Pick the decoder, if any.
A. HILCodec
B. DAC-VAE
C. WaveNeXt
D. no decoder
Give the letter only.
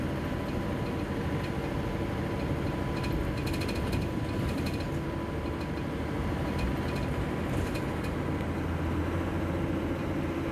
D